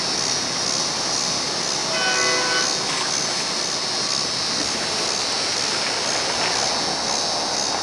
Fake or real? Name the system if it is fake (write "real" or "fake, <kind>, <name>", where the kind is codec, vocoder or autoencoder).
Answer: real